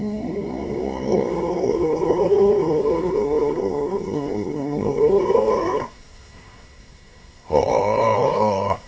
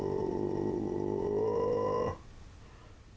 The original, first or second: second